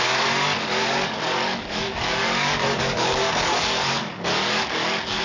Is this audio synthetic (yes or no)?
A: yes